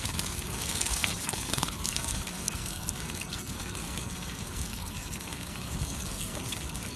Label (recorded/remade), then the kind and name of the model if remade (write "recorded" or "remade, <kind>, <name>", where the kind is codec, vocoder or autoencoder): remade, codec, SNAC